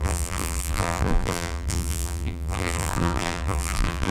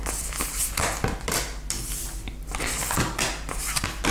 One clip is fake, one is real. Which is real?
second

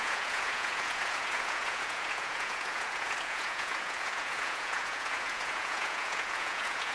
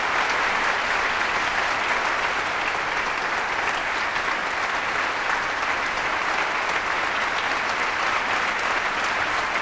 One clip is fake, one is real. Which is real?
second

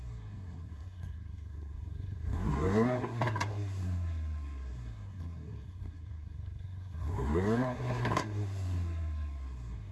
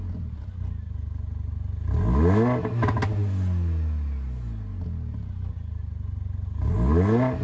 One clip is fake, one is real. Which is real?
second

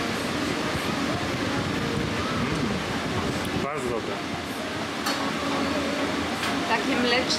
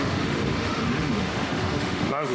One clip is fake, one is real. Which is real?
first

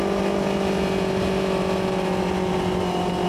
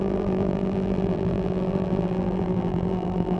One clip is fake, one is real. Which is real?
first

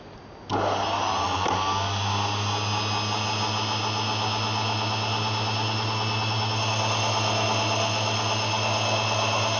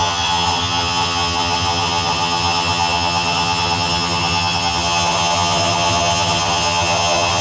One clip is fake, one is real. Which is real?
first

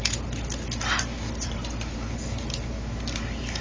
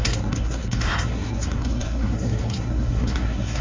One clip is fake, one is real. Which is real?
first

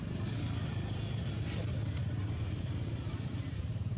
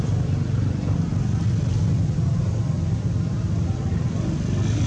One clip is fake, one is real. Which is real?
second